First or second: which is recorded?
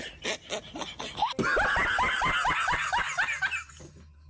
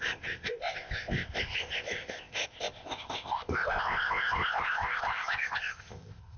first